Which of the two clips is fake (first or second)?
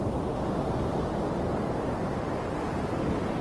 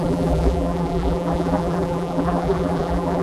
second